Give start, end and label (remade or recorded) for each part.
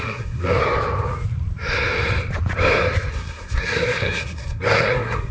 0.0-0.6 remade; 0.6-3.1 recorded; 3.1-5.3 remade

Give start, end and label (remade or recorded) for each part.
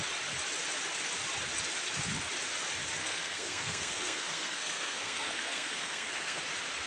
0.0-3.0 recorded; 3.0-6.4 remade; 6.4-6.9 recorded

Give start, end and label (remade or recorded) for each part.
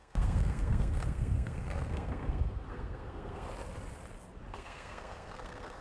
0.0-3.5 remade; 3.5-4.5 recorded; 4.5-5.8 remade